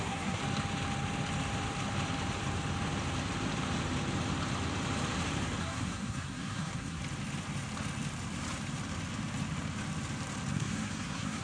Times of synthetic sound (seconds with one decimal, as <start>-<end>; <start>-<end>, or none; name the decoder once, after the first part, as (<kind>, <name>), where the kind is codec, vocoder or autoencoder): 0.0-0.4 (codec, SNAC); 5.6-7.0; 10.5-11.4